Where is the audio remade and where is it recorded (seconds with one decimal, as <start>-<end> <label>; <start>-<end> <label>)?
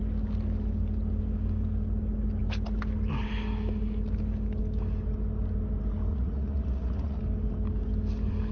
0.0-6.1 recorded; 6.1-7.2 remade; 7.2-8.5 recorded